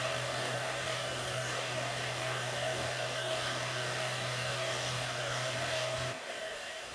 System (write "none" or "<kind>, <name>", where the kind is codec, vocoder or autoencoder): codec, DAC